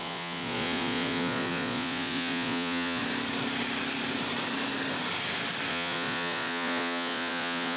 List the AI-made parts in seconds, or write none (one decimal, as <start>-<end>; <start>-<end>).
0.0-3.0; 5.7-7.8